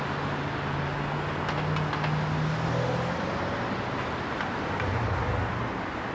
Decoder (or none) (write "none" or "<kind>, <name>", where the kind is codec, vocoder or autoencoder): none